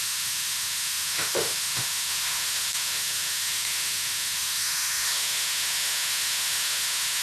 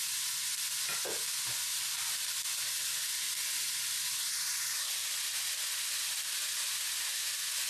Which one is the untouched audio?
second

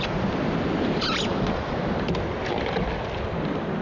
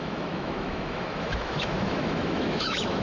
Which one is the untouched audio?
first